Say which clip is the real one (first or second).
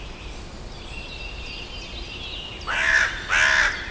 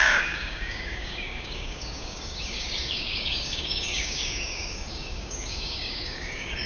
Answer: first